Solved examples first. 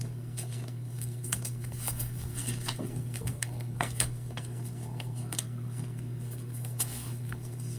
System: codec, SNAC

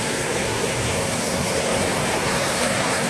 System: codec, SNAC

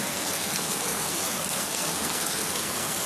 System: codec, SNAC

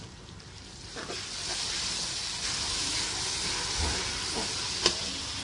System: none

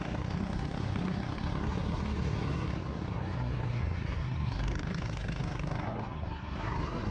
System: codec, SNAC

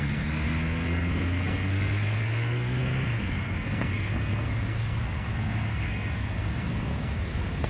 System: codec, SNAC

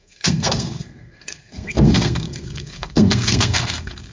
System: codec, SNAC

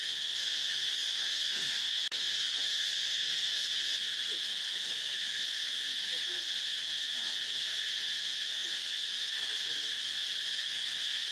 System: codec, SNAC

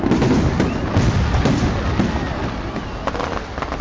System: none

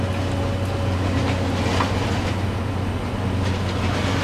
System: none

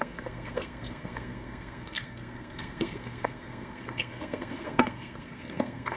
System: codec, SNAC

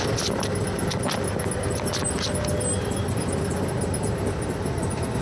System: none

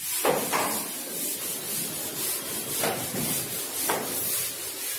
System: none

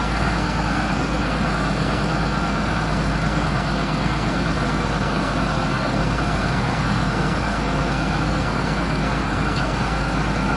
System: codec, SNAC